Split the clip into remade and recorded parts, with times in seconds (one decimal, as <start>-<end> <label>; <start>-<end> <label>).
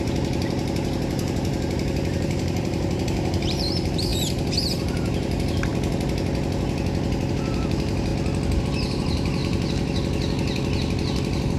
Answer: 0.0-5.7 remade; 5.7-7.3 recorded; 7.3-8.1 remade; 8.1-8.6 recorded; 8.6-9.4 remade; 9.4-11.6 recorded